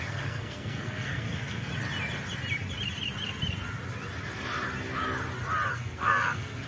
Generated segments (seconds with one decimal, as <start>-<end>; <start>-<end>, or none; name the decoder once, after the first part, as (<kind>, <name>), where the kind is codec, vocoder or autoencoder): 0.0-1.7 (codec, SNAC); 5.7-6.7